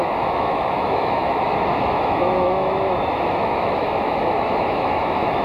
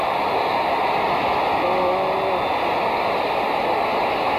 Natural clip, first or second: second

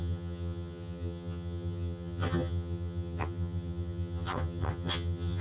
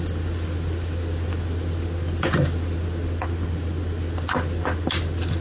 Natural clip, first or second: second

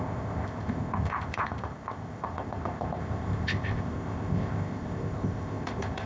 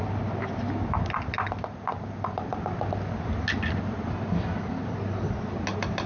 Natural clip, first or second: second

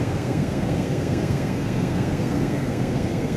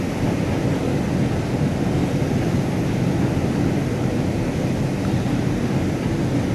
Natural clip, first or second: second